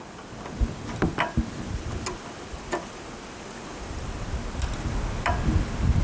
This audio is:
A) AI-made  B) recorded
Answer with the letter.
A